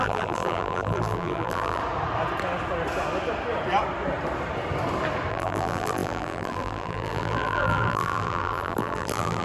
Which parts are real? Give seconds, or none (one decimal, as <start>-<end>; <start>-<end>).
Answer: 1.8-5.3